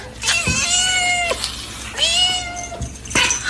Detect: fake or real real